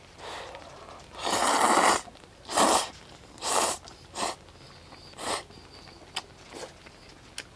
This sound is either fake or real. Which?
real